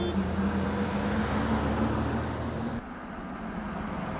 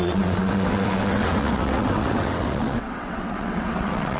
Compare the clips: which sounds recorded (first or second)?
first